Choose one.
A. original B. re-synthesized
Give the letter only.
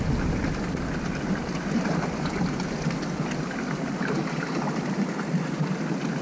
A